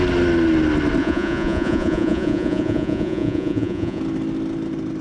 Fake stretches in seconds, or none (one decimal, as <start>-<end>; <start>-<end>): 1.0-4.0